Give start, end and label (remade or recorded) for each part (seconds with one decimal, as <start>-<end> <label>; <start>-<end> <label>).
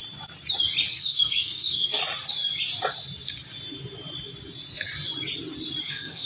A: 0.0-0.9 recorded; 0.9-2.0 remade; 2.0-5.8 recorded; 5.8-6.3 remade